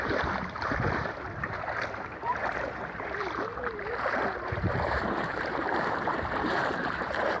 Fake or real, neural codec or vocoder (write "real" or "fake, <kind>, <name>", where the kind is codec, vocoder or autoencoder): fake, vocoder, BigVGAN v2